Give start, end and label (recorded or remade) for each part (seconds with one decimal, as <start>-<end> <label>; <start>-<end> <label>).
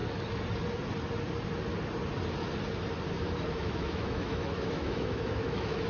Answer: 0.0-3.5 recorded; 3.5-5.9 remade